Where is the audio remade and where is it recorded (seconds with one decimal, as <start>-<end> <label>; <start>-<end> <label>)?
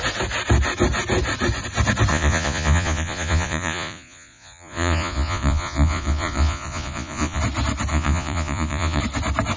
0.0-2.1 recorded; 2.1-7.4 remade; 7.4-7.9 recorded; 7.9-9.0 remade; 9.0-9.6 recorded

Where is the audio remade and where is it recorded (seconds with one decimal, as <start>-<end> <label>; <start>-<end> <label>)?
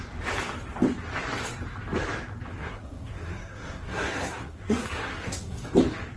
0.0-2.6 recorded; 2.6-5.6 remade; 5.6-6.2 recorded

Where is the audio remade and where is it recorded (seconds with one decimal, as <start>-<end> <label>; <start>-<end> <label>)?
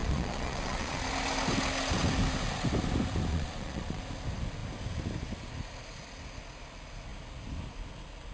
0.0-1.1 remade; 1.1-3.3 recorded; 3.3-4.0 remade; 4.0-8.3 recorded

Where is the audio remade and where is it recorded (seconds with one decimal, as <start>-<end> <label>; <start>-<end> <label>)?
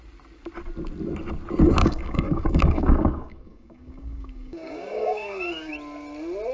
0.0-1.8 recorded; 1.8-5.7 remade; 5.7-6.5 recorded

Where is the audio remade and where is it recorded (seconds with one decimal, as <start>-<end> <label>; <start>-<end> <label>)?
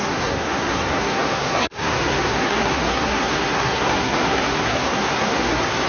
0.0-5.9 remade